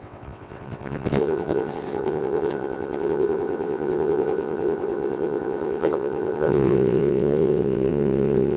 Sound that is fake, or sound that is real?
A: fake